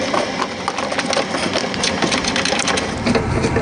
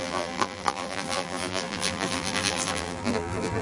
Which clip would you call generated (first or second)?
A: second